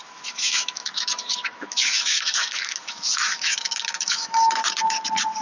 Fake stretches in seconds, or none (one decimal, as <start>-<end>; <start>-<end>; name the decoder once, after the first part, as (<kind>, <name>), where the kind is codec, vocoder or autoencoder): 0.0-4.6 (autoencoder, DAC-VAE)